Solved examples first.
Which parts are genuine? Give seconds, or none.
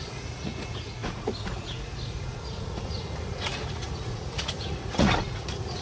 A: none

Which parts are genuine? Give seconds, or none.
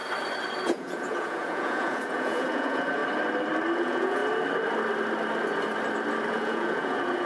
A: 0.0-0.6; 3.0-3.7; 4.2-6.3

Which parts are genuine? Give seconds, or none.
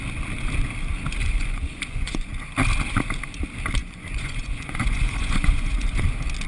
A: 0.0-1.2; 2.3-3.8; 6.0-6.5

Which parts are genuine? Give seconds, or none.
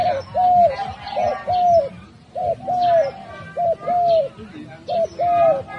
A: 0.0-5.8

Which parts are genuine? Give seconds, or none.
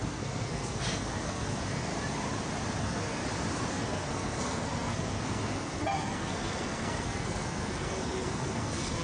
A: 1.9-2.8; 3.2-3.7